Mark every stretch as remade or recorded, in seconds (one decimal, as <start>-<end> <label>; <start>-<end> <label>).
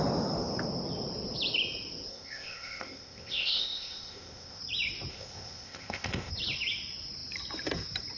0.0-2.1 recorded; 2.1-4.6 remade; 4.6-5.1 recorded; 5.1-6.3 remade; 6.3-8.2 recorded